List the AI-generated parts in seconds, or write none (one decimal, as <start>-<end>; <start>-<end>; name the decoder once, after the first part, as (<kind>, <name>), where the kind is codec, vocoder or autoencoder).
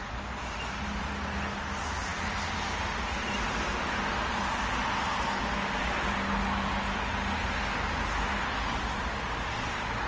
none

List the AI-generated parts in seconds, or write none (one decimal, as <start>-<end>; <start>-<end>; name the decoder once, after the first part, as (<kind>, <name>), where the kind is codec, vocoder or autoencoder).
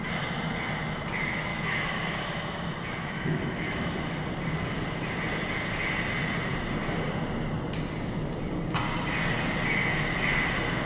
1.5-4.2 (autoencoder, DAC-VAE)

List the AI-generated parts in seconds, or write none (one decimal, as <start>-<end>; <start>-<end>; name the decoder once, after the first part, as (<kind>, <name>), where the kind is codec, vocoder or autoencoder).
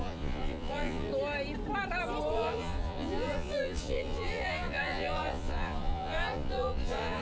0.0-1.1 (vocoder, Vocos); 2.3-7.2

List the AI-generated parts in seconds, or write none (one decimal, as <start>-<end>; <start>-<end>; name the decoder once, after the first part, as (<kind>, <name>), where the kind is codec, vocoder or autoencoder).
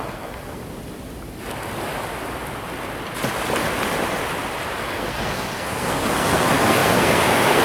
0.0-0.6 (codec, SNAC); 4.8-7.6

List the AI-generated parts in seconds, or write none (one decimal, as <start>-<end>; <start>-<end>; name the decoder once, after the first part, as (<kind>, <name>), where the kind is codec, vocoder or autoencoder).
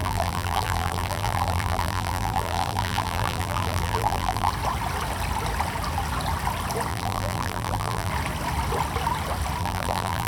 0.0-4.5 (vocoder, BigVGAN v2); 6.9-8.1; 9.6-10.3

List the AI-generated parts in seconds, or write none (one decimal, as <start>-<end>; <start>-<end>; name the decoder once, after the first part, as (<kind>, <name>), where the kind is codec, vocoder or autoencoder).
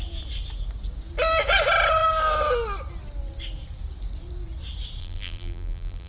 5.0-6.1 (vocoder, BigVGAN v2)